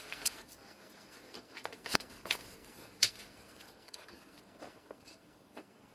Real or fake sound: fake